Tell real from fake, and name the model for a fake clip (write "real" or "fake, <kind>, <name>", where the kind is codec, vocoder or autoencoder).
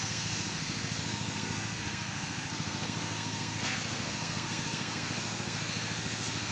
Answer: fake, codec, SNAC